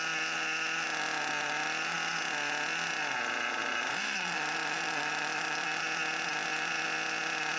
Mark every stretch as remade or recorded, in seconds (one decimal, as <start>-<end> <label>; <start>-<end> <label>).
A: 0.0-3.7 recorded; 3.7-5.8 remade; 5.8-7.6 recorded